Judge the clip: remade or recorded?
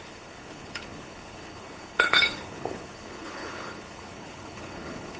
remade